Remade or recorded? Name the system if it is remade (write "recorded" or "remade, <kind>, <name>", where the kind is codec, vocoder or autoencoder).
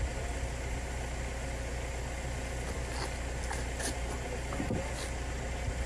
recorded